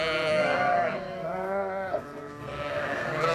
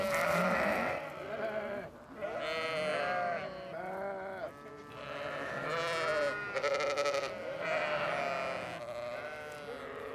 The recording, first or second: second